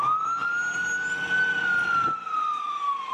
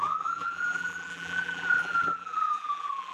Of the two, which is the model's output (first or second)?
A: second